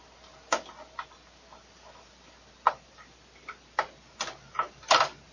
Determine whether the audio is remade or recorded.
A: recorded